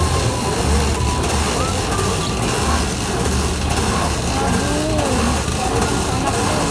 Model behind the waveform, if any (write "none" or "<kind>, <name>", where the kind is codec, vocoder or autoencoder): none